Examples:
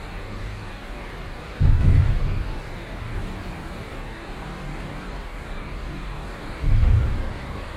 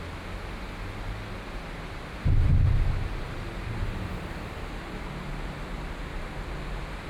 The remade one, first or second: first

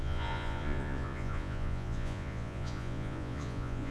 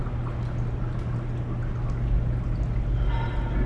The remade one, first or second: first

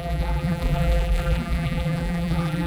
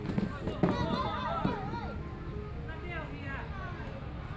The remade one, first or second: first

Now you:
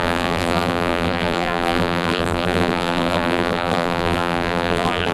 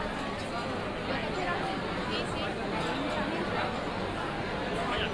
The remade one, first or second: first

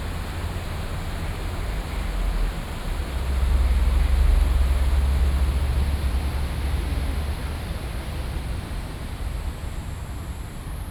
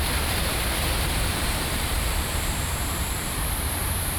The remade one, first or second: second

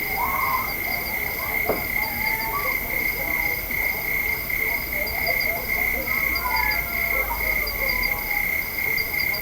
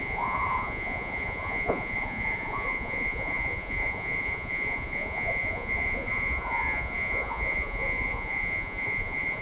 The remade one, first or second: second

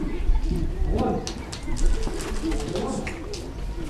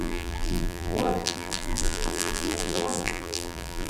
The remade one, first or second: second